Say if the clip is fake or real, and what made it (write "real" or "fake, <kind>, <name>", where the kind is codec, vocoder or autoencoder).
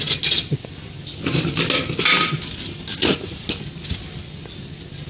real